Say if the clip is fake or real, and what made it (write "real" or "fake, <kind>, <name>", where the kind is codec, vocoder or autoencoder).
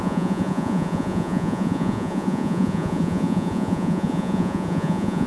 fake, vocoder, Vocos